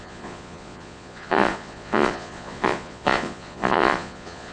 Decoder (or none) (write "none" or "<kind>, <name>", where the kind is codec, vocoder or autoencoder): vocoder, Vocos